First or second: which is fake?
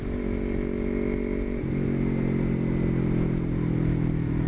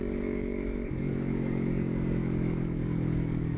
second